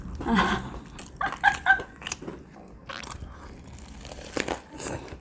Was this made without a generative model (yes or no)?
yes